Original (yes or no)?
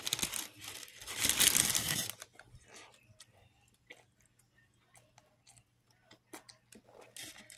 yes